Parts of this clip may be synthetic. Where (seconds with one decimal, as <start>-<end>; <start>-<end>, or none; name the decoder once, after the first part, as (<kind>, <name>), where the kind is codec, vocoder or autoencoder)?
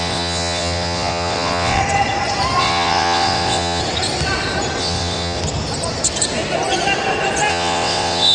0.0-1.8 (vocoder, WaveNeXt); 2.6-3.8; 4.8-5.4; 7.5-8.3